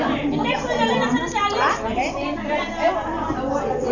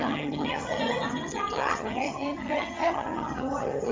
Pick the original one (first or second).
first